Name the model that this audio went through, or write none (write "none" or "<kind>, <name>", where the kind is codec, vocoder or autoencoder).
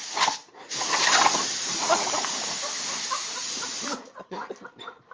none